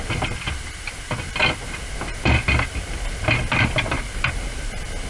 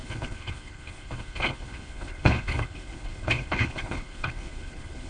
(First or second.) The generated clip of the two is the second